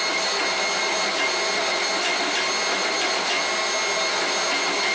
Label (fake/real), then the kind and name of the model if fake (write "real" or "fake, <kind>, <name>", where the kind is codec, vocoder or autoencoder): real